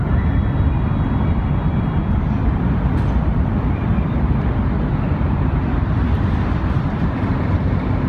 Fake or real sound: fake